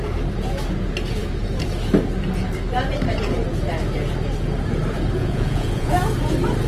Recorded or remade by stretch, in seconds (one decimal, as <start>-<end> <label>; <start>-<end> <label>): 0.0-5.2 recorded; 5.2-5.9 remade; 5.9-6.7 recorded